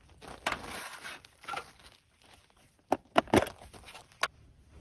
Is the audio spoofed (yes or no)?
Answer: no